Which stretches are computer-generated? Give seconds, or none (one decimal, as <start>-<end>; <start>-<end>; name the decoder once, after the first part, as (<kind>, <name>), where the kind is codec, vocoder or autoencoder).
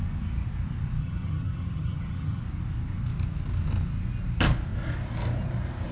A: 1.0-2.4 (vocoder, HiFi-GAN)